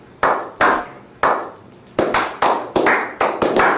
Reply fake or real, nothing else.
real